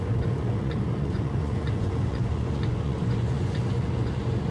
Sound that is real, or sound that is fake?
fake